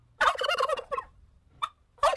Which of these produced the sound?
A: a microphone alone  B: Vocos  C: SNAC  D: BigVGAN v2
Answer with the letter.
D